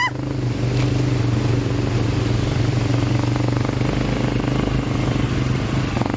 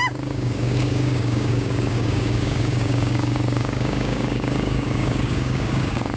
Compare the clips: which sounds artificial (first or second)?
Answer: second